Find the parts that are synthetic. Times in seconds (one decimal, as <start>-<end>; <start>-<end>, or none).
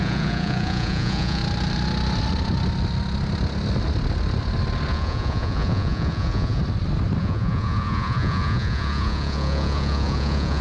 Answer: 0.0-1.4; 4.9-6.6; 7.2-10.6